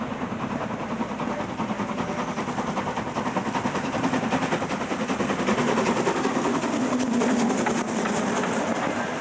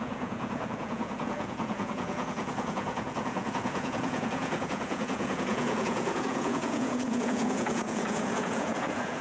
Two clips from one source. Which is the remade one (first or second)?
second